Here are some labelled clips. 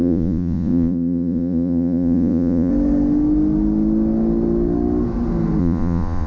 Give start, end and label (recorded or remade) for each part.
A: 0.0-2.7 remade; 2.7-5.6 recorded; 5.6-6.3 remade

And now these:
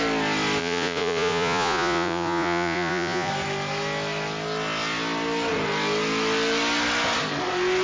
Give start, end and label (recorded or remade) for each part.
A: 0.0-0.6 recorded; 0.6-3.3 remade; 3.3-7.8 recorded

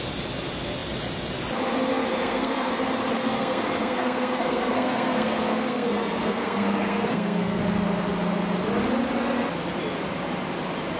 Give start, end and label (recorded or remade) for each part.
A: 0.0-1.9 recorded; 1.9-2.7 remade; 2.7-3.2 recorded; 3.2-7.6 remade; 7.6-11.0 recorded

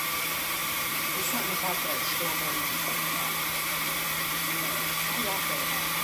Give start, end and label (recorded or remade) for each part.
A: 0.0-0.6 recorded; 0.6-3.2 remade; 3.2-3.7 recorded; 3.7-4.5 remade; 4.5-6.0 recorded

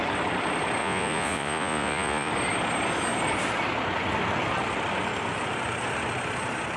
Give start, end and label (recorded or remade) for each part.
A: 0.0-0.8 recorded; 0.8-2.3 remade; 2.3-6.8 recorded

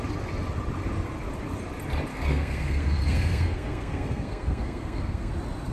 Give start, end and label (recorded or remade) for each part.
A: 0.0-2.1 recorded; 2.1-5.3 remade; 5.3-5.7 recorded

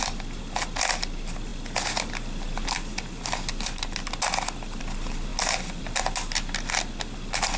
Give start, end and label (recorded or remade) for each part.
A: 0.0-7.6 recorded

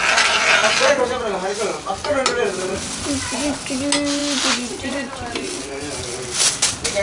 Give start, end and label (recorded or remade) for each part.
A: 0.0-7.0 recorded